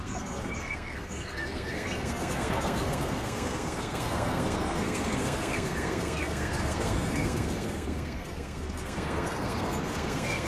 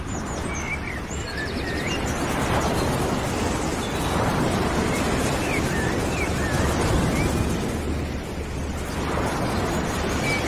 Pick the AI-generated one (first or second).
first